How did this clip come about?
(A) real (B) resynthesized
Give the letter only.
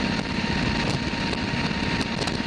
A